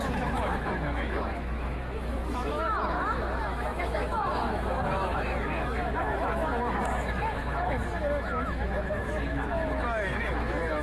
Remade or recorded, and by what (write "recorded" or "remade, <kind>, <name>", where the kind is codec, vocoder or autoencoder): remade, autoencoder, DAC-VAE